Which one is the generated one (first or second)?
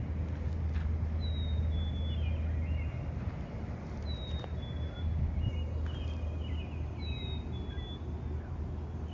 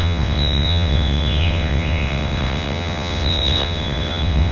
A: second